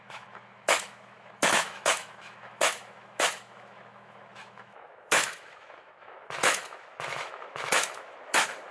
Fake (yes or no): yes